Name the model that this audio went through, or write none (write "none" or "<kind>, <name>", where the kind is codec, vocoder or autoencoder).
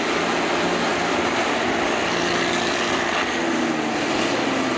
none